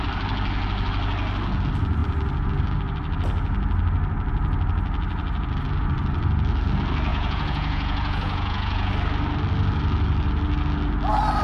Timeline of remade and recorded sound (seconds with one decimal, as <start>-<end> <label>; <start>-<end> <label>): 0.0-7.1 recorded; 7.1-8.9 remade; 8.9-11.4 recorded